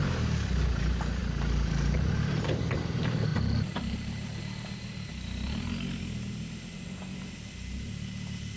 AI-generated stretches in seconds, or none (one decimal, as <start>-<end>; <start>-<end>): 1.2-2.1; 3.3-4.4